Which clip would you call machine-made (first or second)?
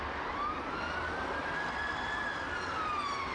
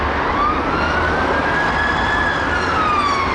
first